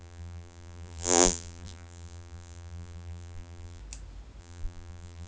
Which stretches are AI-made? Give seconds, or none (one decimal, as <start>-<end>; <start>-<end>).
0.0-3.8; 4.4-5.3